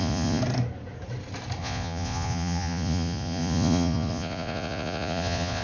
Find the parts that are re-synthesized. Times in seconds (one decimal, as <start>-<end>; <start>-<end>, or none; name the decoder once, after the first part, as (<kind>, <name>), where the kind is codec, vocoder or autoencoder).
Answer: 0.0-0.4 (vocoder, Vocos); 1.6-5.6